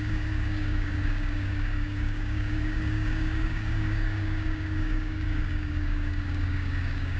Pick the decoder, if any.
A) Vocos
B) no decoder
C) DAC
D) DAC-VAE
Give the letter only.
C